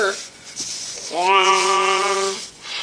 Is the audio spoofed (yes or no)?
yes